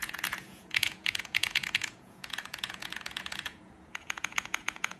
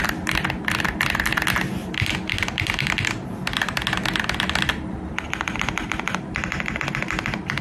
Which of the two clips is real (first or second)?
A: second